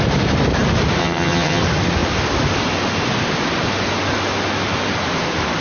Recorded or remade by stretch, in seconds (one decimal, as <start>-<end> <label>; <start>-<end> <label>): 0.0-1.0 recorded; 1.0-1.6 remade; 1.6-5.6 recorded